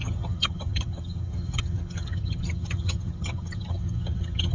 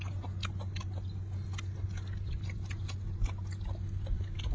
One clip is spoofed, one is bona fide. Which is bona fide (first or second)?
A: second